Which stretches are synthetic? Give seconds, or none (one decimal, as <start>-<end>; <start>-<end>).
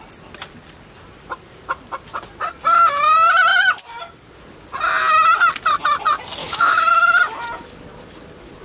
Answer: 6.4-7.2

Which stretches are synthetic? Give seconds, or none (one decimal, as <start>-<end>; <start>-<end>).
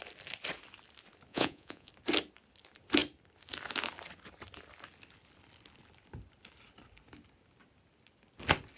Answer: 1.3-1.9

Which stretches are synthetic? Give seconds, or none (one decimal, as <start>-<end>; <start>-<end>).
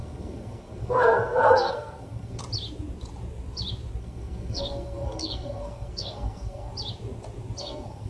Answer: 0.0-2.4; 4.0-6.7; 7.6-8.1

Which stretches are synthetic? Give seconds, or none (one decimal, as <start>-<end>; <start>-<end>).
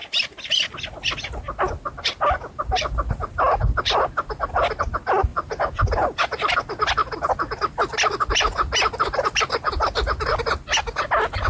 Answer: 5.3-6.5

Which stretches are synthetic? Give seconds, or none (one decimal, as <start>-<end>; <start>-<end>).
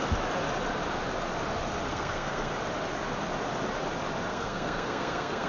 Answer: 1.9-2.5; 4.3-5.5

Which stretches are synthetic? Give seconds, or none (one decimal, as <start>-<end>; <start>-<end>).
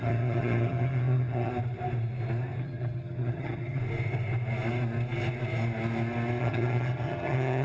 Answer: 0.0-1.5; 2.6-3.8; 6.4-7.6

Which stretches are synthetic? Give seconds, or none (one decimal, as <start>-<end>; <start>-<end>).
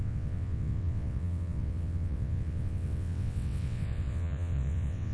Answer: 0.0-5.1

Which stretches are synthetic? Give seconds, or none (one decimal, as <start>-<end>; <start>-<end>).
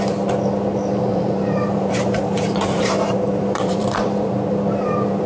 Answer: 1.1-4.3